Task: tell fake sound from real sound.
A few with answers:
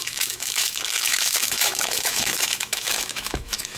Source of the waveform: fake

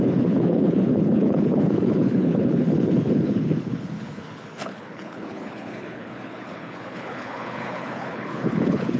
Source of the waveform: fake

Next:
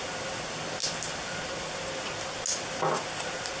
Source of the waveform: real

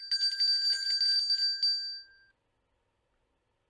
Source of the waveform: real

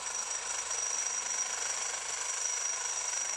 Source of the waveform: real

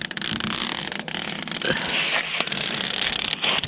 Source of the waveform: real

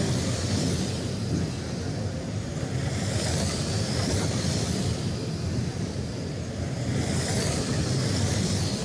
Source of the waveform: real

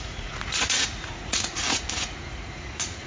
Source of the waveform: fake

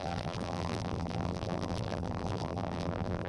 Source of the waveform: fake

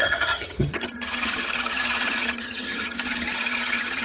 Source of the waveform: fake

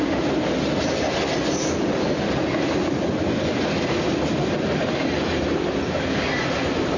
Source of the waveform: real